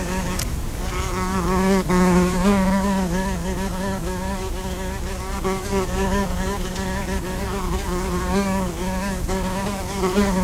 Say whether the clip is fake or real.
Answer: fake